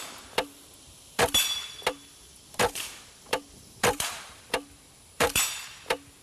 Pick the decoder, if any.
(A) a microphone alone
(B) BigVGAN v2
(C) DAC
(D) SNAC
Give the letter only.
B